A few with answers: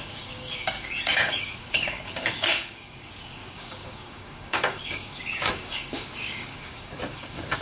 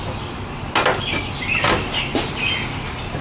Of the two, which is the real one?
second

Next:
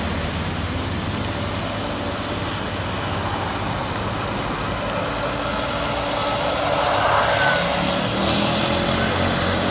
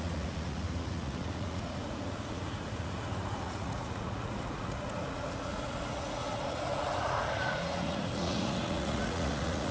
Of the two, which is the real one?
first